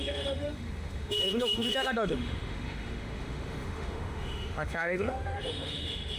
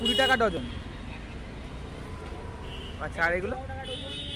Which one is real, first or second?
second